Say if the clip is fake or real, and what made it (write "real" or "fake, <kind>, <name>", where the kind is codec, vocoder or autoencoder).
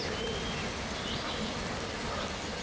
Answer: real